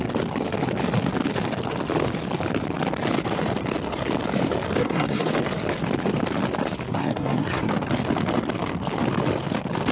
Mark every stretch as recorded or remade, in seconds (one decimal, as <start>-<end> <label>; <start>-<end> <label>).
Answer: 0.0-4.8 recorded; 4.8-5.3 remade; 5.3-6.9 recorded; 6.9-7.7 remade; 7.7-9.9 recorded